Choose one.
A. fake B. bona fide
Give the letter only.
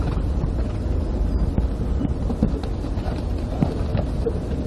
B